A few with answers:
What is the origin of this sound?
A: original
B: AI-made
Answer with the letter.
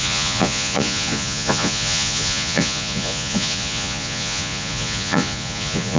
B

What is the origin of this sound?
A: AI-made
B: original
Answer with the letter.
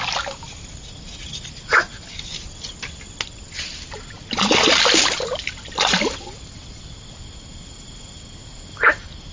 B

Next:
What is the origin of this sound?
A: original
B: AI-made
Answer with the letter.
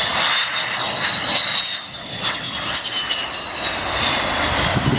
A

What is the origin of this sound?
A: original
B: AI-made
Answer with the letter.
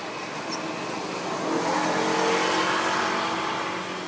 A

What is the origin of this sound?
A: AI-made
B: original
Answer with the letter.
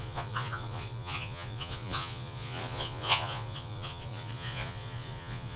A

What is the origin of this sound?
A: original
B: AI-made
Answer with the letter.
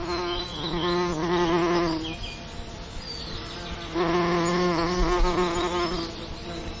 A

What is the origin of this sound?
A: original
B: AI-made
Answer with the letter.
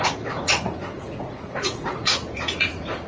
B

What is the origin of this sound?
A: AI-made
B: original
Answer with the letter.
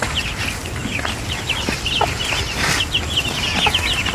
B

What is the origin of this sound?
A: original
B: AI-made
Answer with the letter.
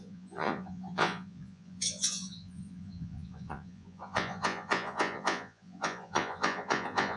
B